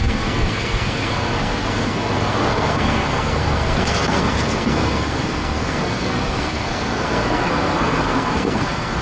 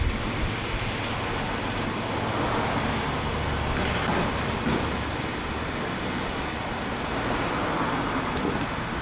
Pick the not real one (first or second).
first